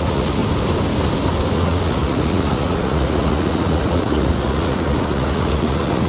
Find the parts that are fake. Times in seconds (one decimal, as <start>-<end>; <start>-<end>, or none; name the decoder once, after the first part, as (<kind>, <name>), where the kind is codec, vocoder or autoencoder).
0.0-0.4 (vocoder, Vocos); 1.5-6.1